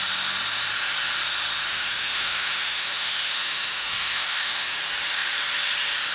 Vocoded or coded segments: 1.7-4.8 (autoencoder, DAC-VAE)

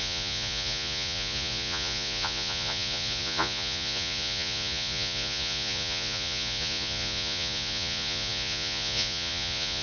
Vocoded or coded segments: 0.0-9.8 (vocoder, Vocos)

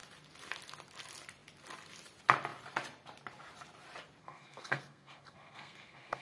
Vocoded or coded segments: 4.2-6.2 (codec, SNAC)

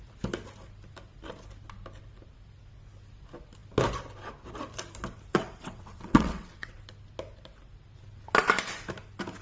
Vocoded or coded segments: 5.3-6.8 (vocoder, WaveNeXt)

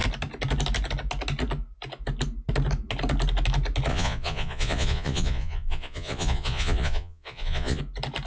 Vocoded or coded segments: 3.9-7.8 (vocoder, Vocos)